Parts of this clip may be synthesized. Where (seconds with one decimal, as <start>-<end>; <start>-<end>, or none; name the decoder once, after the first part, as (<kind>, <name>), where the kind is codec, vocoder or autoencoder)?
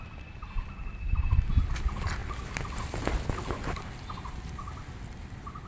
none